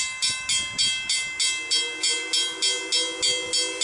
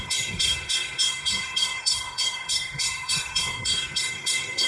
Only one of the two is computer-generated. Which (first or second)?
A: second